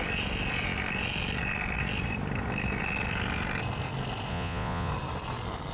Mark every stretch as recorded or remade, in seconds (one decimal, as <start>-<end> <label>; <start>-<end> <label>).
0.0-4.3 recorded; 4.3-4.9 remade; 4.9-5.7 recorded